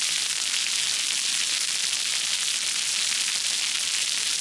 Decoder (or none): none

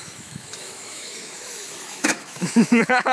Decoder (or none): autoencoder, DAC-VAE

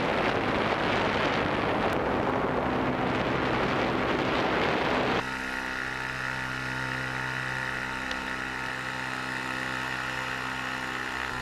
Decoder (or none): none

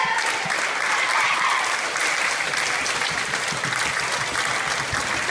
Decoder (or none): none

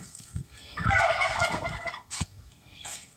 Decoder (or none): codec, SNAC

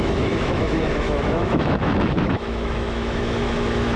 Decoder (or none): autoencoder, DAC-VAE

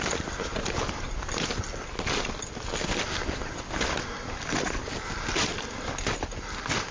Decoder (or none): none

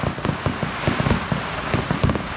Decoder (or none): none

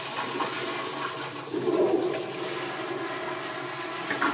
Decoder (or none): none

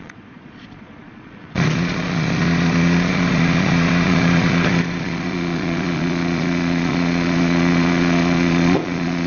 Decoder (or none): vocoder, Vocos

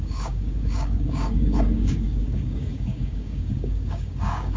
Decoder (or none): codec, DAC